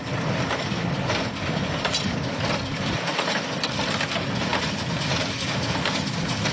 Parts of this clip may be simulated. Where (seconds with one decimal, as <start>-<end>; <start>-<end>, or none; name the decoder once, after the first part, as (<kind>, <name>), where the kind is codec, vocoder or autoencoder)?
none